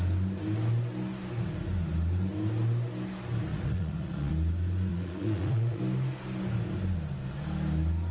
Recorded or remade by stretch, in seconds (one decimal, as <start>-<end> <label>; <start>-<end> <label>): 0.0-3.5 recorded; 3.5-4.3 remade; 4.3-4.9 recorded; 4.9-5.8 remade; 5.8-8.1 recorded